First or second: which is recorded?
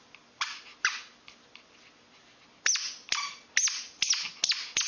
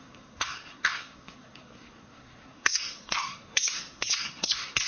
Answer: first